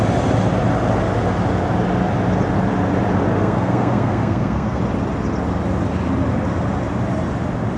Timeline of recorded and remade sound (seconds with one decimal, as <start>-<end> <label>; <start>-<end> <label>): 0.0-3.3 recorded; 3.3-4.8 remade; 4.8-7.8 recorded